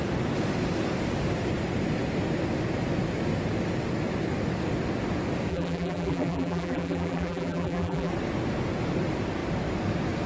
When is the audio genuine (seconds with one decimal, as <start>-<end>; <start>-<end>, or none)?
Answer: 0.0-5.5; 8.1-10.3